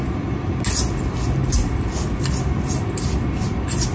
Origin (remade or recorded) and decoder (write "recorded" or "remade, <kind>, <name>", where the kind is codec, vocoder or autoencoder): recorded